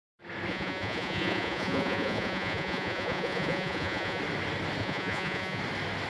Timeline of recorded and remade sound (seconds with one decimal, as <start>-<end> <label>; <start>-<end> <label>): 0.0-0.5 recorded; 0.5-4.2 remade; 4.2-4.8 recorded; 4.8-5.6 remade; 5.6-6.1 recorded